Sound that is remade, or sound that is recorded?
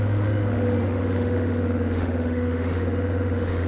remade